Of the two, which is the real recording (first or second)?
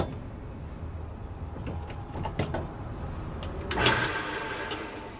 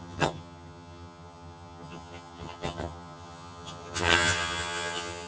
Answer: first